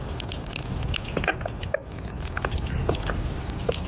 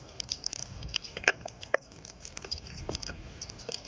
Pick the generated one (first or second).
second